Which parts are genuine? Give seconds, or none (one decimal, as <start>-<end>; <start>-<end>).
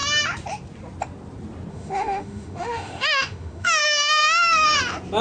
0.0-1.7; 4.8-5.2